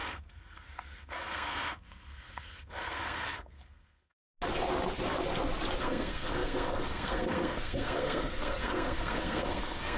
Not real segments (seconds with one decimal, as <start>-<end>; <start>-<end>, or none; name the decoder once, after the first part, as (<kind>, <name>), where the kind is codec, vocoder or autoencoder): 0.0-4.2 (codec, SNAC); 5.8-10.0